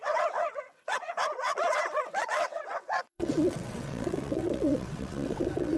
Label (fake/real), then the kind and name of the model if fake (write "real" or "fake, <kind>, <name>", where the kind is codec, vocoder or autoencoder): fake, vocoder, WaveNeXt